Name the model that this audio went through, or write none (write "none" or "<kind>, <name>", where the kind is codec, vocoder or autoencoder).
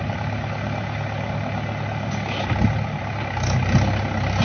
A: none